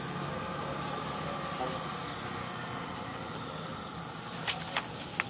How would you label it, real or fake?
real